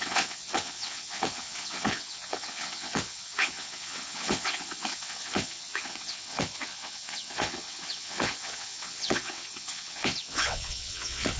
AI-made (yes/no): yes